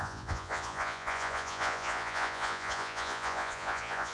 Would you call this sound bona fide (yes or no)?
no